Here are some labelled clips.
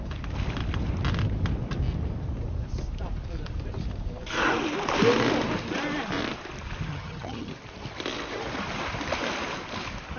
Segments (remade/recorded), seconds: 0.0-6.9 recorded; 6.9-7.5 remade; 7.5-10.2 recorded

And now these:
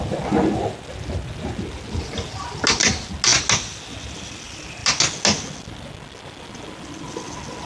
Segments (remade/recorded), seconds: 0.0-7.7 recorded